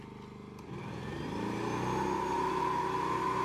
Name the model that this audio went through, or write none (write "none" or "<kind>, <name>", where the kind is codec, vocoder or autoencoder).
none